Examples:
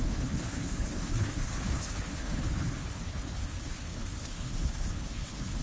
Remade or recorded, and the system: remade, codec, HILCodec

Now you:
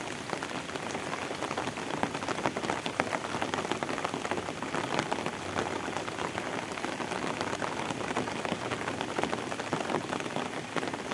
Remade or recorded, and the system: recorded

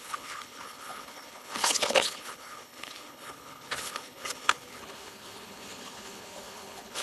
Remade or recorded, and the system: remade, codec, HILCodec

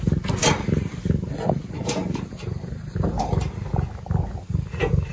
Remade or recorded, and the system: recorded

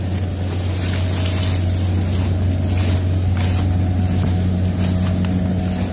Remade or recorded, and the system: recorded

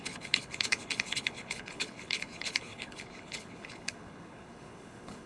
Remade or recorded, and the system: remade, codec, HILCodec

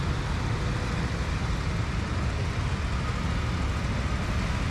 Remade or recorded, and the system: recorded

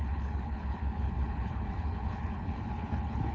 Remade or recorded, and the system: remade, codec, HILCodec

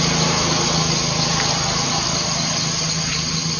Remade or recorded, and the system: recorded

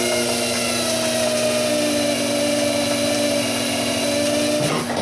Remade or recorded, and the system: recorded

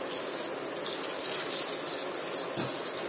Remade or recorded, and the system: recorded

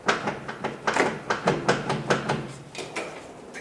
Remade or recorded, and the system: recorded